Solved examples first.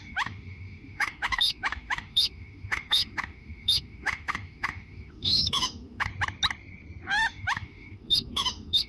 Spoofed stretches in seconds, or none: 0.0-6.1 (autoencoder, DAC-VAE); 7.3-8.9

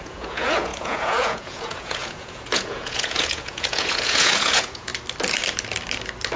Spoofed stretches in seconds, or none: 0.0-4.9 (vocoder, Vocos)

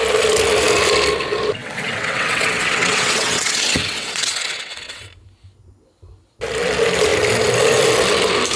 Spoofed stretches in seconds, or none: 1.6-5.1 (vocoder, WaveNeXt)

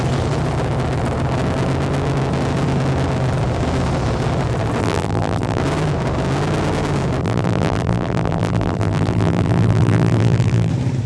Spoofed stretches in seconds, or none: 4.8-5.6 (vocoder, BigVGAN v2); 7.2-10.7

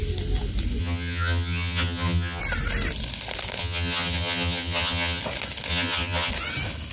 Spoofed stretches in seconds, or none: 0.8-2.4 (vocoder, HiFi-GAN); 3.6-5.2; 5.7-6.3

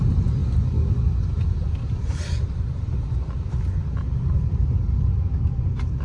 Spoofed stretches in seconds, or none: none

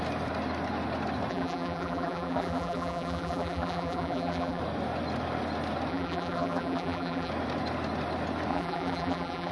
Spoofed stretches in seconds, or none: 1.3-4.6 (vocoder, BigVGAN v2); 5.9-7.3; 8.5-9.5